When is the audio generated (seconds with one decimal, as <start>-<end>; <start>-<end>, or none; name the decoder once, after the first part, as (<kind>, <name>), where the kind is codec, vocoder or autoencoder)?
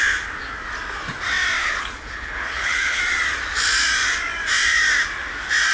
1.6-3.0 (codec, HILCodec)